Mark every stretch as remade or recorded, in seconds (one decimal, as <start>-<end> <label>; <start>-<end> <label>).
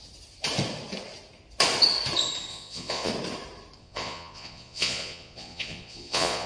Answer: 0.0-2.5 recorded; 2.5-3.1 remade; 3.1-3.8 recorded; 3.8-6.5 remade